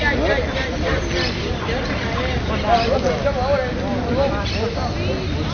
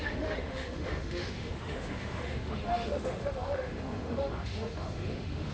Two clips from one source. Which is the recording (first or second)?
first